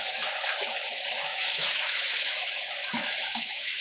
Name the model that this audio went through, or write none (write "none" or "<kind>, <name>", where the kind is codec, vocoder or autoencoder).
autoencoder, DAC-VAE